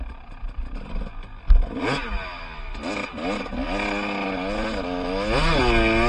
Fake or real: real